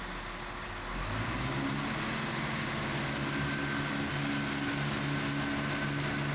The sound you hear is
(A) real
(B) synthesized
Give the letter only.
A